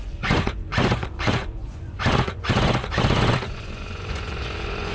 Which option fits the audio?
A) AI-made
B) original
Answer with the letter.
A